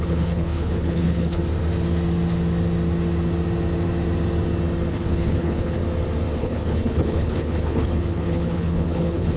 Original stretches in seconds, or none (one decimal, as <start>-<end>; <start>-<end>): 1.4-4.9; 5.8-6.4